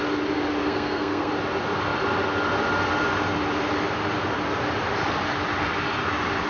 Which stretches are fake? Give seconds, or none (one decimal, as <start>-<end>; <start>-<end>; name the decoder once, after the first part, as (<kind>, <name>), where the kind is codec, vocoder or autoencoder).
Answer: 0.6-1.3 (codec, SNAC)